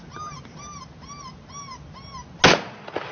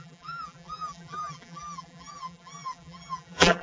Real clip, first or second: first